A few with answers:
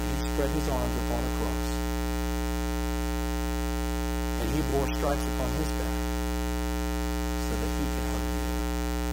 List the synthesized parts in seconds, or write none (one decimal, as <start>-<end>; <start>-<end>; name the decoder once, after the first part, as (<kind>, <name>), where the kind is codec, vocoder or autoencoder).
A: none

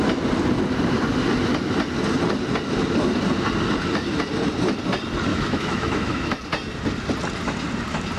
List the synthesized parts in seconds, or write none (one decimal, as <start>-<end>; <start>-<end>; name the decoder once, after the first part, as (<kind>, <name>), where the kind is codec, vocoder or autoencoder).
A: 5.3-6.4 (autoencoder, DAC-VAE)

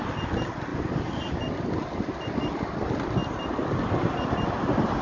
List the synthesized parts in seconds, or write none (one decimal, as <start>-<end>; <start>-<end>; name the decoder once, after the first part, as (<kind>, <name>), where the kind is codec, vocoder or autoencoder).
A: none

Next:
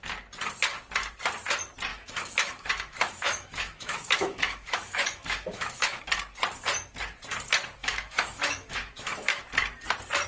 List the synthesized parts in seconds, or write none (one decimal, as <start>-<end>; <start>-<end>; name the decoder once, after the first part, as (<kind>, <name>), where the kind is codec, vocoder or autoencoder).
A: 1.9-6.0 (autoencoder, DAC-VAE); 7.8-9.4